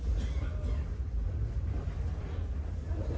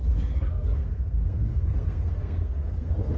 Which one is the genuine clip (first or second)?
first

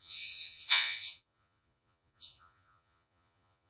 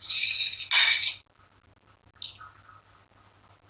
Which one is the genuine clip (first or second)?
second